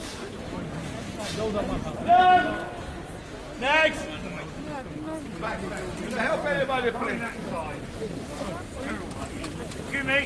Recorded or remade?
recorded